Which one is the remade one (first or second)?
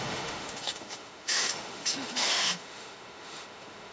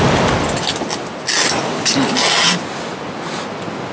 first